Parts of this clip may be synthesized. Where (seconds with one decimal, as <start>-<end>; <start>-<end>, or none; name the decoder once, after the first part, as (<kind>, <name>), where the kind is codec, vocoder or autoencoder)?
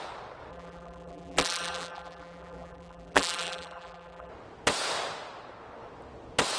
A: 0.5-4.3 (vocoder, BigVGAN v2)